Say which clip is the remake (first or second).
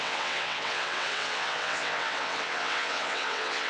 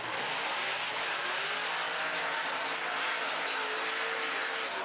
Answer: first